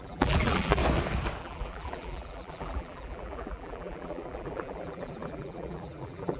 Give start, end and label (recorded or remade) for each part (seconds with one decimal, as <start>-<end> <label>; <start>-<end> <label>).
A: 0.0-0.8 remade; 0.8-1.4 recorded; 1.4-6.4 remade